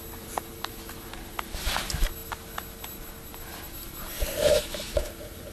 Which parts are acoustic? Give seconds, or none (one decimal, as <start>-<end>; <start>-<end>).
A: 0.0-4.5; 5.1-5.5